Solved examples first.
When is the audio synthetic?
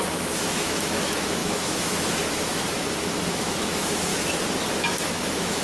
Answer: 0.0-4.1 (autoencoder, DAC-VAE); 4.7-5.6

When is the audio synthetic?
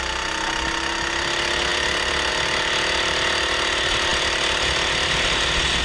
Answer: none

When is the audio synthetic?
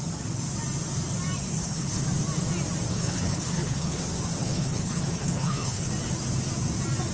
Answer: 1.5-2.0 (codec, HILCodec); 2.9-4.0; 4.4-5.9